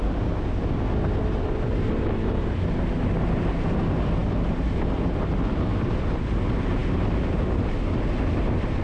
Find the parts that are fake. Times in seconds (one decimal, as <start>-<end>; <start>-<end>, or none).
none